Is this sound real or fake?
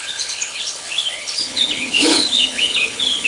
fake